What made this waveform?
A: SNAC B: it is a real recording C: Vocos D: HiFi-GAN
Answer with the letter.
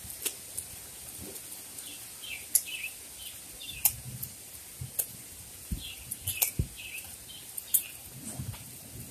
B